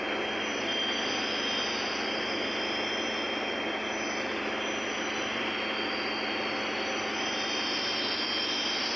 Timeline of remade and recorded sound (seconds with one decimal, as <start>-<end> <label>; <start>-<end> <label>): 0.0-9.0 recorded